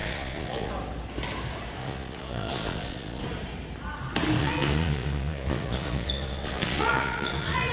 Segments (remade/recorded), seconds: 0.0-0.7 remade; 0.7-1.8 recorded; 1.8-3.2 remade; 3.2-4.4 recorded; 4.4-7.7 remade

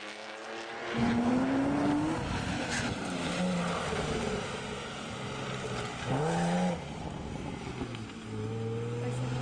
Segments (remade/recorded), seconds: 0.0-9.4 recorded

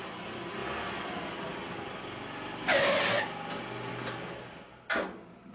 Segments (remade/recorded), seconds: 0.0-5.5 recorded

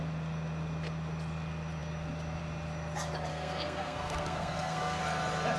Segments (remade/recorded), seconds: 0.0-3.3 recorded; 3.3-5.0 remade; 5.0-5.6 recorded

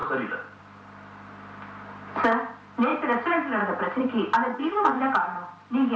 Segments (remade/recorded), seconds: 0.0-4.5 recorded; 4.5-5.0 remade; 5.0-6.0 recorded